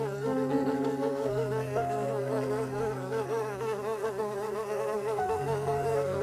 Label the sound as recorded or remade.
remade